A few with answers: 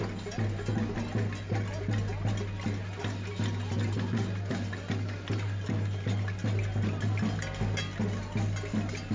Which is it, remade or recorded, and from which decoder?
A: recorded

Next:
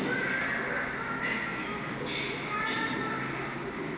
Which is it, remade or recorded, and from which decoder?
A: recorded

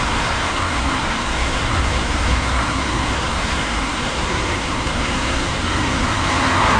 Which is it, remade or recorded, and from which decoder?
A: remade, codec, SNAC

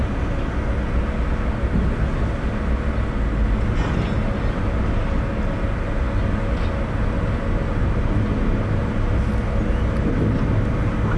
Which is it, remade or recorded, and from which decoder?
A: recorded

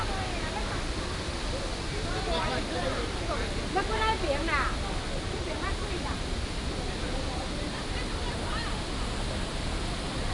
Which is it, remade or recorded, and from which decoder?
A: recorded